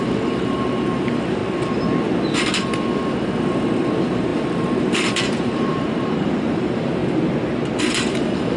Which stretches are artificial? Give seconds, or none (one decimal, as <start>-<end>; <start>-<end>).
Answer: 0.0-1.4; 3.4-7.0; 7.9-8.6